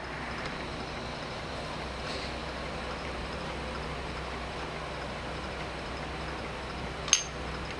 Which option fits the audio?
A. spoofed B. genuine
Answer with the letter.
B